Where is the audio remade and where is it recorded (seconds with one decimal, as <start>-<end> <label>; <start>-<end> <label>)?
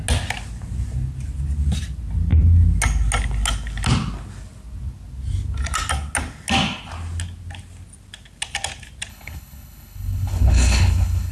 0.0-9.1 recorded; 9.1-11.3 remade